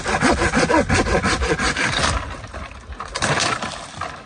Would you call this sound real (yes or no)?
yes